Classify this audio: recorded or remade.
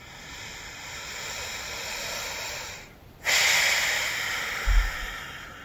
recorded